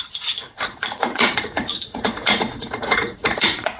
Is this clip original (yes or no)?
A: no